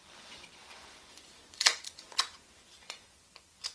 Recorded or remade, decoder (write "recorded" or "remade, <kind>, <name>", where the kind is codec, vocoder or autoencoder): remade, vocoder, Vocos